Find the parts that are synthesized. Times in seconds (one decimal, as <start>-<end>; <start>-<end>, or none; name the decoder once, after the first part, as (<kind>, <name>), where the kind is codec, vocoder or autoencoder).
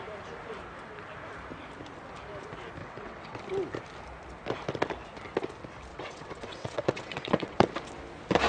2.8-3.4 (vocoder, WaveNeXt); 5.9-7.7